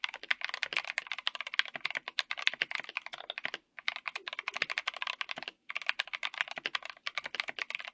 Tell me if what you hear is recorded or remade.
recorded